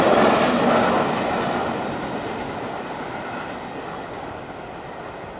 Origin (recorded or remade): recorded